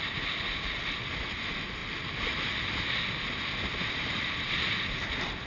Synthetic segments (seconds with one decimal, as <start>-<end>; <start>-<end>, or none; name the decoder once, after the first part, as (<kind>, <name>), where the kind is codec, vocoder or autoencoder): 1.8-2.7 (vocoder, BigVGAN v2)